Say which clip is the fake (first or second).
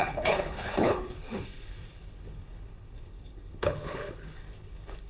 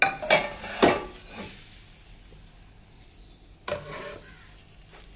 first